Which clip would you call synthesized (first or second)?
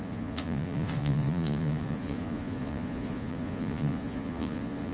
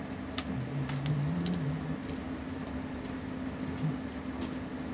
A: first